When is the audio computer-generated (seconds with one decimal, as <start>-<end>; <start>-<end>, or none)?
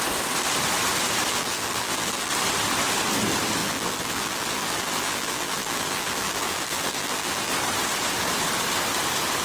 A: 1.3-2.3; 3.6-7.5